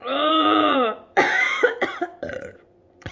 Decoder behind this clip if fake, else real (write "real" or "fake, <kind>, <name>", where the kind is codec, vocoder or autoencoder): fake, vocoder, Vocos